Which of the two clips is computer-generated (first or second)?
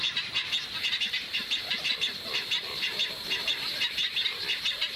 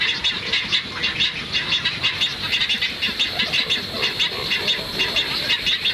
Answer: first